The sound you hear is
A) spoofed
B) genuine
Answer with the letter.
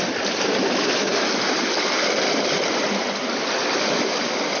B